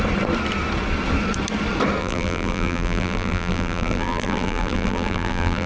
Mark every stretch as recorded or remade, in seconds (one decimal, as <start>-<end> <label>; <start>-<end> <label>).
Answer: 0.0-2.0 recorded; 2.0-5.7 remade